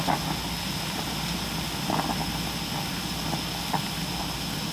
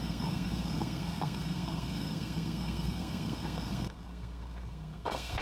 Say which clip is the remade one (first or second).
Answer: second